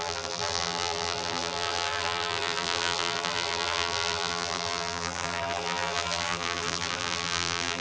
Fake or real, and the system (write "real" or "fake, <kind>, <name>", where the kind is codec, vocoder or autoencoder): fake, vocoder, BigVGAN v2